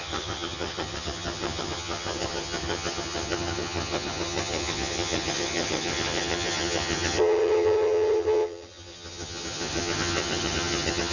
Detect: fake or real fake